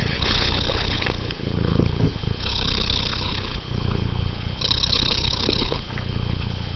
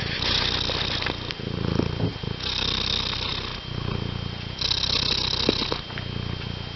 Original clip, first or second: second